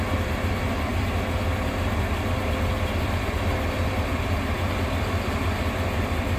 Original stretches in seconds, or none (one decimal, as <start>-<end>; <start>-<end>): 0.0-6.4